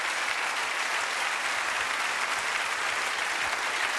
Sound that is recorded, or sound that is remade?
recorded